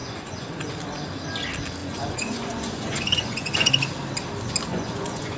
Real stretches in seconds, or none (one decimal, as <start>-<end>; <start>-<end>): 0.7-1.8; 3.7-4.7